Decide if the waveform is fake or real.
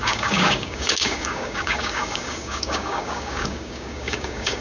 fake